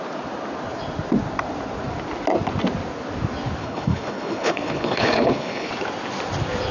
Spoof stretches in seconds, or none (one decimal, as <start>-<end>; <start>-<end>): 3.6-5.7